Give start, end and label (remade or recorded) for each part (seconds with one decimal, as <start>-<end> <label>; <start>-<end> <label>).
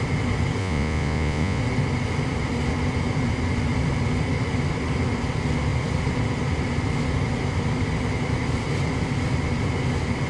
0.0-0.6 recorded; 0.6-1.6 remade; 1.6-10.3 recorded